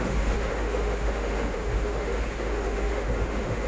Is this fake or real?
fake